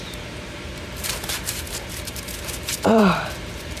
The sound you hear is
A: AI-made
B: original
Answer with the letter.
A